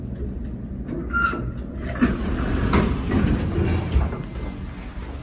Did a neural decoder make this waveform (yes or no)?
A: no